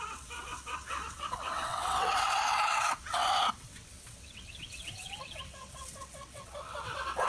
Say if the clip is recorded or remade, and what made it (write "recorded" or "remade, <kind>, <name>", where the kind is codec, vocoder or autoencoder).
remade, vocoder, WaveNeXt